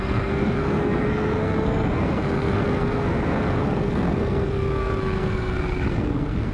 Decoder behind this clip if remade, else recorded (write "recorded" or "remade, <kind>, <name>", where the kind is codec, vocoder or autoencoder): remade, codec, SNAC